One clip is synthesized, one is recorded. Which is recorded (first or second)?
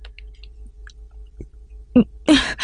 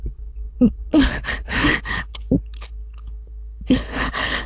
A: first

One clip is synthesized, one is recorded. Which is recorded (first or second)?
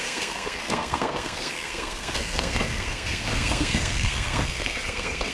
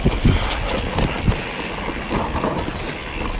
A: second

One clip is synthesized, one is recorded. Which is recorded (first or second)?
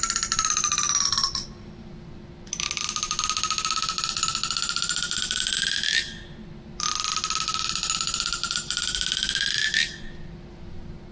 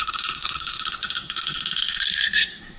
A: first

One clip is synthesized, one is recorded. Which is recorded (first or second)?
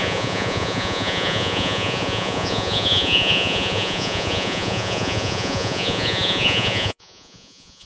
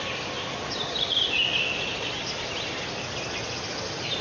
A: second